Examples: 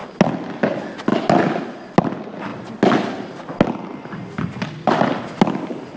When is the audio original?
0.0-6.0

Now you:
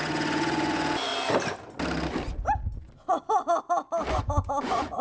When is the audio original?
1.1-4.1

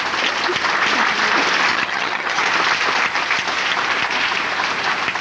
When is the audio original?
0.0-1.7; 2.4-5.2

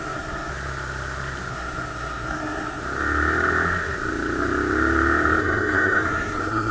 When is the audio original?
0.5-1.5; 2.8-5.4

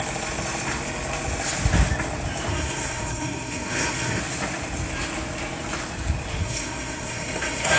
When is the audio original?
0.0-2.5; 4.2-6.4

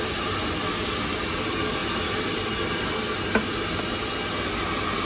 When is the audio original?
0.0-5.0

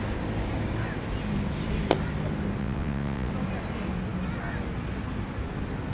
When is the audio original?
0.0-2.6; 3.3-5.9